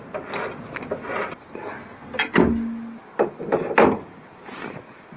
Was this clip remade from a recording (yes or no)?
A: no